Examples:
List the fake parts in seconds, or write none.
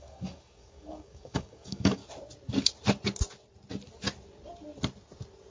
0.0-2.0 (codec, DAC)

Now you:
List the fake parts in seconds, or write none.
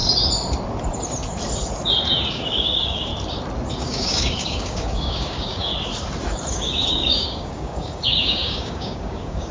2.3-3.1 (codec, DAC); 3.7-5.7; 6.5-9.5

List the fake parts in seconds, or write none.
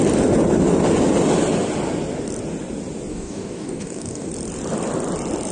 3.1-4.3 (codec, DAC)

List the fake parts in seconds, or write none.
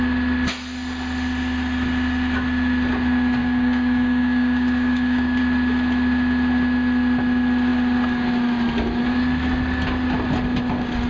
3.4-5.4 (codec, DAC)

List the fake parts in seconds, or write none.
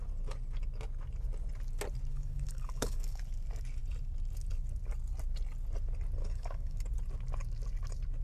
2.1-3.2 (codec, DAC); 6.2-6.8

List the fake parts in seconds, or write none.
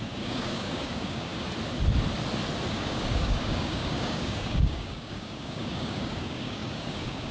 0.0-1.3 (codec, DAC); 2.7-7.3